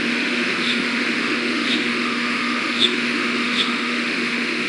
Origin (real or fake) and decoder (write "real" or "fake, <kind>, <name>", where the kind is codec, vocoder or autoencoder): fake, autoencoder, DAC-VAE